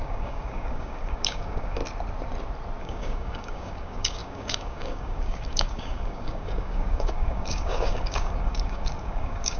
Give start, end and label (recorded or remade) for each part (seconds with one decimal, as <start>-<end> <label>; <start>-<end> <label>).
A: 0.0-1.8 remade; 1.8-2.8 recorded; 2.8-9.6 remade